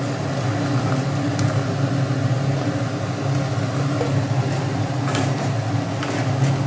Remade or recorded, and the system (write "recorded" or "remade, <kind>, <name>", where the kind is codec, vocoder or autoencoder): recorded